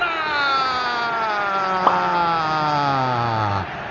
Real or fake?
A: real